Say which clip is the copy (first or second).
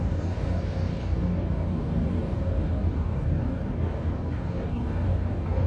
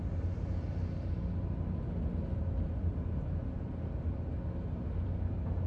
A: first